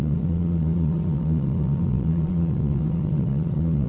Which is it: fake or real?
fake